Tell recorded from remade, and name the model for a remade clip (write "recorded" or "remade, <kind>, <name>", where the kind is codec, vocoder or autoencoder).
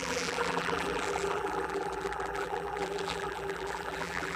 remade, vocoder, BigVGAN v2